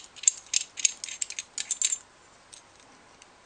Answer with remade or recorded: recorded